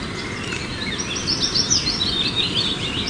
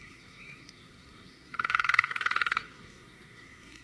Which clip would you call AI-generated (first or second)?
second